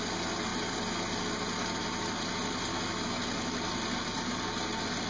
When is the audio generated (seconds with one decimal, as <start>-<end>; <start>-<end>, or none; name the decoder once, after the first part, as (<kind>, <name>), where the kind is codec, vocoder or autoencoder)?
2.7-3.2 (autoencoder, DAC-VAE)